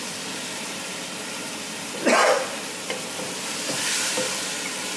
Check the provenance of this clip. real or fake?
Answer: real